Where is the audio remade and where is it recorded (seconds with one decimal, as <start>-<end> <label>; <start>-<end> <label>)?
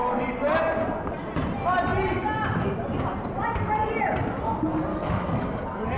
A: 0.0-4.9 recorded; 4.9-5.6 remade; 5.6-6.0 recorded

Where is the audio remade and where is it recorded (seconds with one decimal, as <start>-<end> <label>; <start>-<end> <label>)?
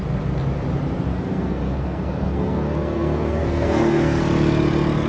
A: 0.0-1.1 recorded; 1.1-4.2 remade; 4.2-5.1 recorded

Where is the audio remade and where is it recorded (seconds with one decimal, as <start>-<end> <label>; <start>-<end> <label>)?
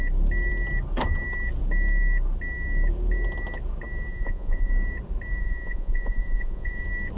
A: 0.0-4.1 recorded; 4.1-4.7 remade; 4.7-5.4 recorded; 5.4-6.8 remade; 6.8-7.2 recorded